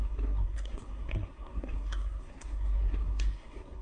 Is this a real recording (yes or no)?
no